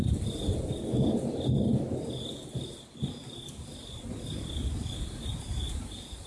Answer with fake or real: real